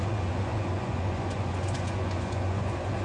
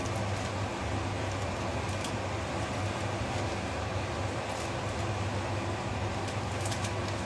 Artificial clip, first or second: first